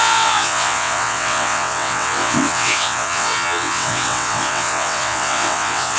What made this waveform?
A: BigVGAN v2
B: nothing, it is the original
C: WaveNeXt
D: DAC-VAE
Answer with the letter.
C